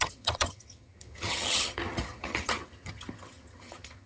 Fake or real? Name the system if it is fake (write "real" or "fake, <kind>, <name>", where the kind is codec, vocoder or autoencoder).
fake, vocoder, HiFi-GAN